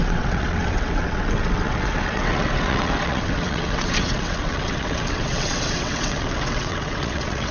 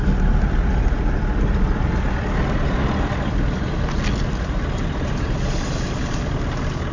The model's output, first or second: first